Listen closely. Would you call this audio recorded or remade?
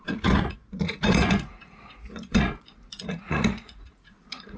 remade